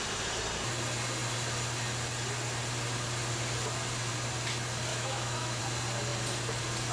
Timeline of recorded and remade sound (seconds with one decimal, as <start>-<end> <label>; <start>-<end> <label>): 0.0-4.9 recorded; 4.9-5.6 remade; 5.6-6.9 recorded